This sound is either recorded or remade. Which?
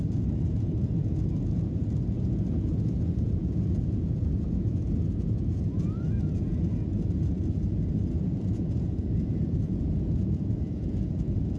remade